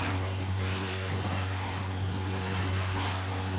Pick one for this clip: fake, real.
fake